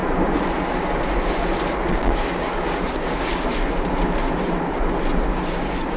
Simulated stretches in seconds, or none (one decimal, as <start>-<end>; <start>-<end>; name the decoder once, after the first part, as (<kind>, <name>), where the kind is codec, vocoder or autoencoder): 1.9-3.3 (codec, DAC); 5.2-6.0